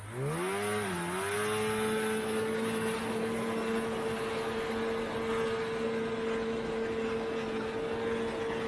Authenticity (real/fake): real